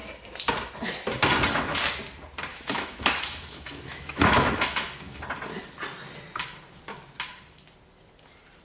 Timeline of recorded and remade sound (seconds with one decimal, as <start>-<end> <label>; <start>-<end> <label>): 0.0-2.5 recorded; 2.5-5.2 remade; 5.2-8.6 recorded

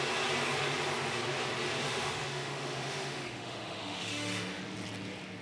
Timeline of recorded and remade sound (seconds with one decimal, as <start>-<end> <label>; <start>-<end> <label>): 0.0-1.9 recorded; 1.9-4.6 remade; 4.6-5.4 recorded